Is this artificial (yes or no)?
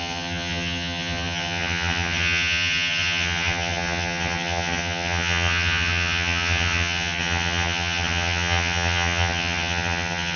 yes